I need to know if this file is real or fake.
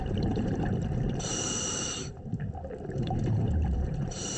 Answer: fake